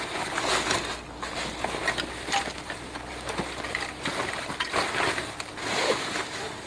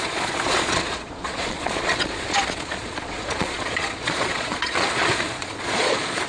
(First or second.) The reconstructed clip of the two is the second